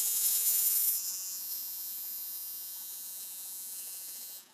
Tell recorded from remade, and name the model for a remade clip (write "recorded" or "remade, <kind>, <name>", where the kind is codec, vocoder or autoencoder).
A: remade, vocoder, Vocos